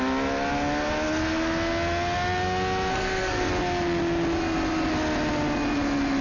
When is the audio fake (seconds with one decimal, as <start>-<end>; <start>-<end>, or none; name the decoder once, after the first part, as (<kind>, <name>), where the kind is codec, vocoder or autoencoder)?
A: 2.9-3.5 (codec, SNAC)